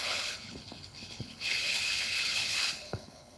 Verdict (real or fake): fake